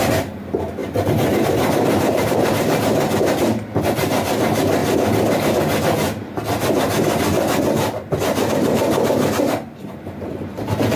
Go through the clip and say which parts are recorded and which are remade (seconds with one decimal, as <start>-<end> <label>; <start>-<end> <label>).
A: 0.0-4.8 remade; 4.8-8.5 recorded; 8.5-11.0 remade